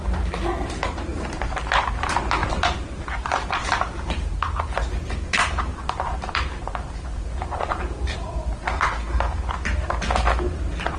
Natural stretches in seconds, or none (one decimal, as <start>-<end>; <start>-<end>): 0.0-1.1; 1.7-2.4; 4.3-5.7; 8.3-11.0